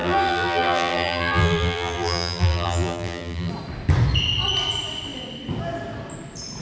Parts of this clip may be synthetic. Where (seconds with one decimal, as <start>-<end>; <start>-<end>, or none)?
0.0-3.5